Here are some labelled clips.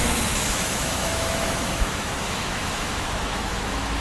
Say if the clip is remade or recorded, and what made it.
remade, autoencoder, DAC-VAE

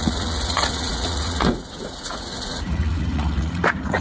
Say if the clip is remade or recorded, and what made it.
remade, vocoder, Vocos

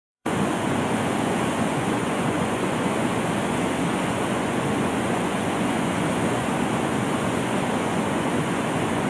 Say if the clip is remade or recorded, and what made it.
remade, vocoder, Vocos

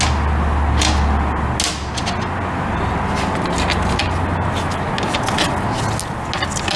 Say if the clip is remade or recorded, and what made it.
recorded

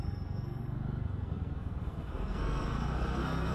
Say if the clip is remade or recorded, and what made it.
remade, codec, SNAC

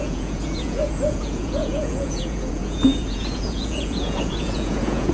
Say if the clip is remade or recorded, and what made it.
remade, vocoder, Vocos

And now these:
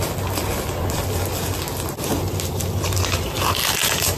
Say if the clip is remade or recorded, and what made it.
recorded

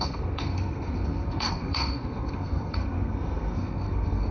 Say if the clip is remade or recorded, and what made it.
remade, codec, SNAC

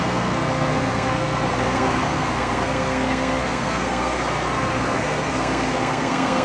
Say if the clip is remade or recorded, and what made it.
remade, codec, SNAC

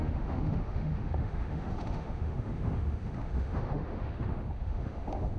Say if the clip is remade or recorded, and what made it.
remade, autoencoder, DAC-VAE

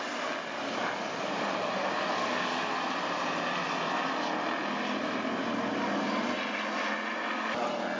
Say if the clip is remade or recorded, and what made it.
recorded